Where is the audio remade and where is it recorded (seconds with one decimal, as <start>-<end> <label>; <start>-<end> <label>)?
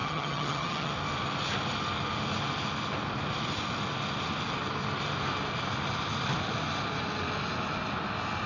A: 0.0-0.9 remade; 0.9-8.5 recorded